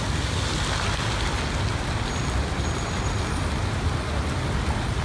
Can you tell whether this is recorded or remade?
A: recorded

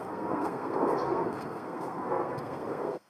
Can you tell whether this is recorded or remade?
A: remade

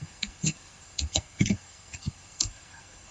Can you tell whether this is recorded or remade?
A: remade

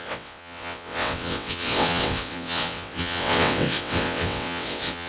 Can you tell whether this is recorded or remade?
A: remade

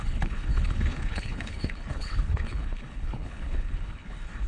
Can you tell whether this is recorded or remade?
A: remade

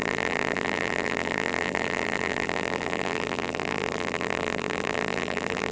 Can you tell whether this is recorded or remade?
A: remade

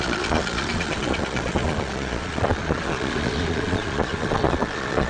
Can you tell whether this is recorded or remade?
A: remade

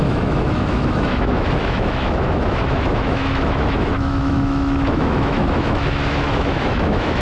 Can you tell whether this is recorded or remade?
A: remade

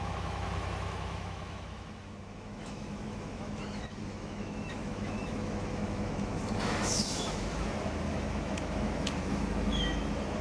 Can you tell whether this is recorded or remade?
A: remade